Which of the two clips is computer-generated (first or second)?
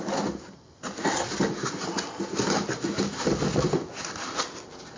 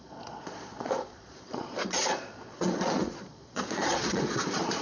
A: second